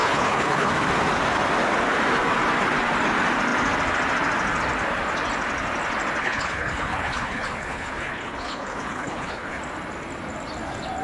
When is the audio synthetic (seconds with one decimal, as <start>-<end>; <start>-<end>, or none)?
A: 0.0-0.7; 6.2-9.6